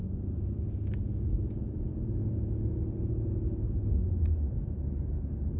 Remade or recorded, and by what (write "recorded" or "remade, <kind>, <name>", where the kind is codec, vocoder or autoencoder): recorded